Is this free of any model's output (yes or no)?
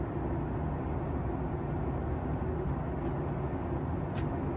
yes